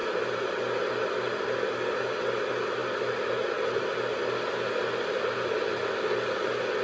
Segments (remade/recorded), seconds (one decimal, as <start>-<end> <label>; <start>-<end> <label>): 0.0-6.8 recorded